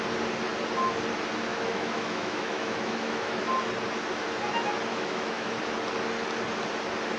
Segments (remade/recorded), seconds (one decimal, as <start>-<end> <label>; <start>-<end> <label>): 0.0-1.5 recorded; 1.5-3.4 remade; 3.4-4.9 recorded; 4.9-5.6 remade; 5.6-7.2 recorded